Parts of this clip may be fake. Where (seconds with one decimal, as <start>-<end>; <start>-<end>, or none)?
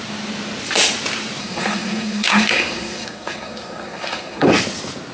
1.4-4.5